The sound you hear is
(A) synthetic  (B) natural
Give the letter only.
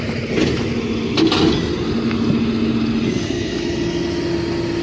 B